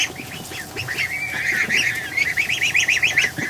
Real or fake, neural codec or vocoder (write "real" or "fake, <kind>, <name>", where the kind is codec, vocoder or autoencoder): real